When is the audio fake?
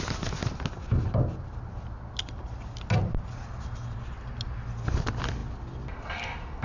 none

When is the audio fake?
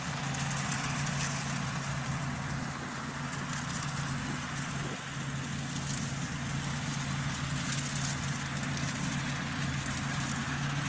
none